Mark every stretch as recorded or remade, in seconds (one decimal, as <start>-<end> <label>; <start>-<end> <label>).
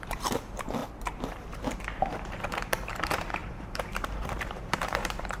0.0-0.8 remade; 0.8-1.4 recorded; 1.4-5.4 remade